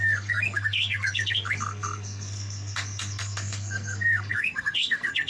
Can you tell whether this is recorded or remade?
remade